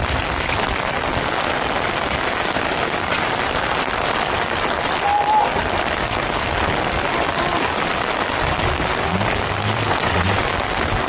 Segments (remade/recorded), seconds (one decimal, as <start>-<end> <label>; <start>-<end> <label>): 0.0-9.9 recorded; 9.9-10.4 remade; 10.4-11.1 recorded